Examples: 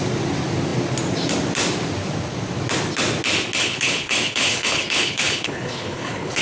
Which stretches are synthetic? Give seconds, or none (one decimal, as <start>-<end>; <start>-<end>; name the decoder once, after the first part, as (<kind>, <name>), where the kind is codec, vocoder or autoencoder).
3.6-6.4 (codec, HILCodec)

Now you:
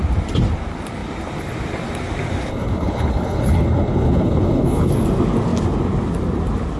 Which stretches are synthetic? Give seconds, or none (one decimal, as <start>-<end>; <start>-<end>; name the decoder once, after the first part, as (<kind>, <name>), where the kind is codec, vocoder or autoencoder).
2.5-4.9 (codec, HILCodec)

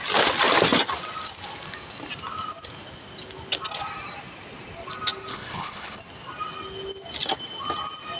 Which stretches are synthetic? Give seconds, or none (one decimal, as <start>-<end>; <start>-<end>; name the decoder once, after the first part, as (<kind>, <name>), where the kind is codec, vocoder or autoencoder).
5.3-6.0 (codec, HILCodec)